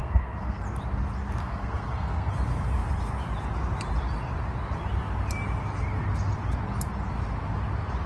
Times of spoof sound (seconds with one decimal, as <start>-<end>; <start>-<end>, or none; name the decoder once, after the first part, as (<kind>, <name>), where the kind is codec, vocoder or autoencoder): 0.0-0.6 (codec, SNAC); 1.4-2.3